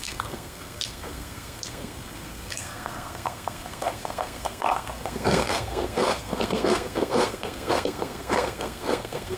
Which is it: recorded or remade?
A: remade